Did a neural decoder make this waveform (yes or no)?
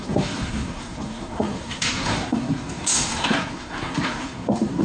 yes